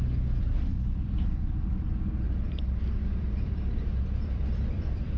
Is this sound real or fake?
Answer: fake